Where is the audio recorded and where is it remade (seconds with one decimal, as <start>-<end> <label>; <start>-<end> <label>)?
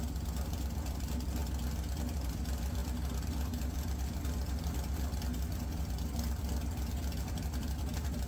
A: 0.0-1.4 remade; 1.4-2.3 recorded; 2.3-8.3 remade